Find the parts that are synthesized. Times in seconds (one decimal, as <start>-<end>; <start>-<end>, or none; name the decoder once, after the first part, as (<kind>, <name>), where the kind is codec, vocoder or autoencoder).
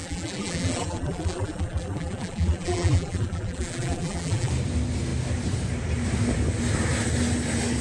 0.0-4.5 (vocoder, BigVGAN v2)